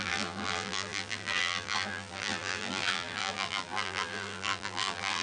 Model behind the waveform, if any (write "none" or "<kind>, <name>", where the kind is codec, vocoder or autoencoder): vocoder, BigVGAN v2